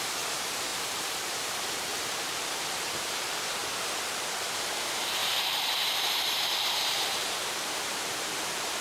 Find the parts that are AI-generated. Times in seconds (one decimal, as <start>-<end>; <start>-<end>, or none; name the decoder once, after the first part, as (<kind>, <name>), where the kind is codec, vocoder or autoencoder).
0.0-3.6 (vocoder, BigVGAN v2); 4.4-8.8